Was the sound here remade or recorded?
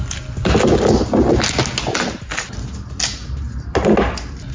recorded